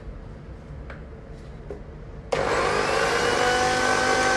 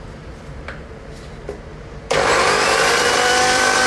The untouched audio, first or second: first